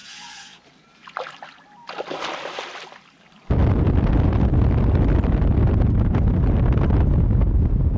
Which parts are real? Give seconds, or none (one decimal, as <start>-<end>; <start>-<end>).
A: 0.6-8.0